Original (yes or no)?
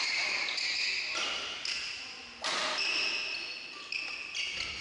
yes